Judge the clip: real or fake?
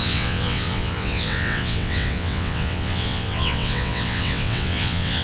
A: fake